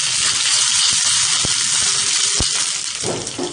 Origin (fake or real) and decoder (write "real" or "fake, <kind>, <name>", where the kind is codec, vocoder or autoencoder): real